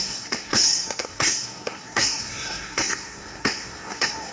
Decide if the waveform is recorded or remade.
remade